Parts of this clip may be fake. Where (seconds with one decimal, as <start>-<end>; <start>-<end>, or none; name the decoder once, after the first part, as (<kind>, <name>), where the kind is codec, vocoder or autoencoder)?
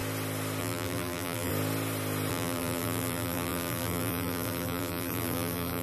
0.6-1.5 (vocoder, BigVGAN v2); 2.3-5.8